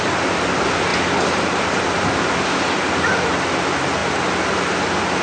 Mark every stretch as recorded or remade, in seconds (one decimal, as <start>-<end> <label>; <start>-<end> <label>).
0.0-5.2 recorded

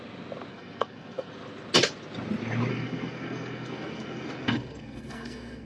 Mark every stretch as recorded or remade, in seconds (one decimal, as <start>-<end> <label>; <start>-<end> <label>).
0.0-0.5 recorded; 0.5-1.3 remade; 1.3-2.7 recorded; 2.7-5.7 remade